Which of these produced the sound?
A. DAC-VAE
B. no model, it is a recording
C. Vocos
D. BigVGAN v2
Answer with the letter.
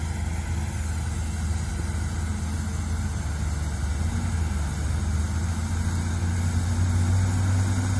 B